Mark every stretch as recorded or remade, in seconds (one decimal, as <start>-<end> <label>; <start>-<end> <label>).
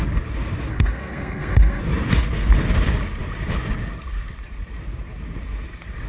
0.0-0.7 recorded; 0.7-1.8 remade; 1.8-6.1 recorded